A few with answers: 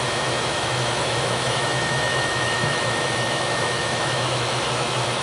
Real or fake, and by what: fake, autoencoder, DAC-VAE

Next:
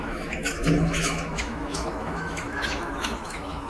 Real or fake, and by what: fake, autoencoder, DAC-VAE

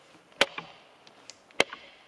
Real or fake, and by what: real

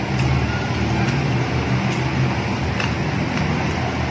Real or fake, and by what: real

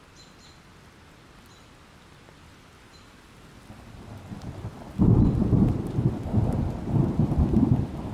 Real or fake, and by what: real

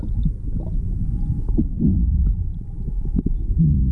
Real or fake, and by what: real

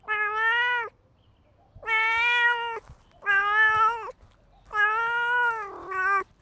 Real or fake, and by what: real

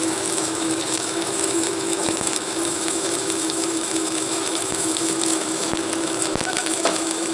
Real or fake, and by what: fake, autoencoder, DAC-VAE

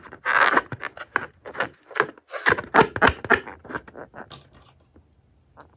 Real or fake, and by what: real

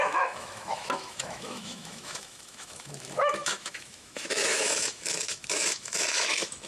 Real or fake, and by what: fake, autoencoder, DAC-VAE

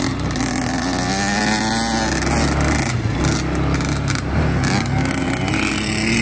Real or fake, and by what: real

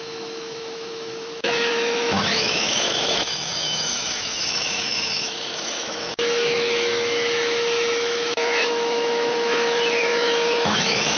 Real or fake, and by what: fake, autoencoder, DAC-VAE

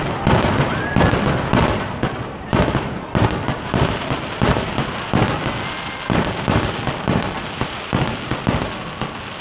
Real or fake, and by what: real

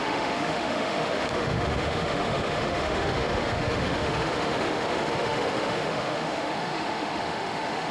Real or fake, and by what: fake, autoencoder, DAC-VAE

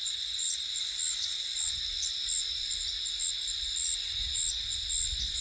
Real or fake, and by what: real